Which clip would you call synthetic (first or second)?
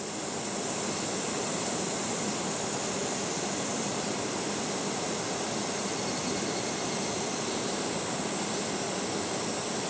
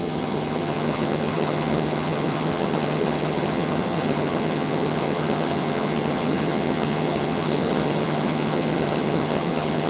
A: second